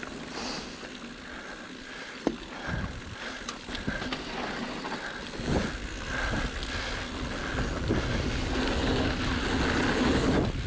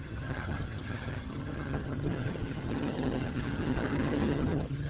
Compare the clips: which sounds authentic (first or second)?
first